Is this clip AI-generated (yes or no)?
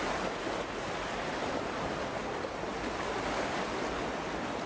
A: no